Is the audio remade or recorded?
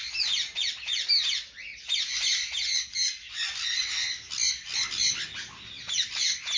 recorded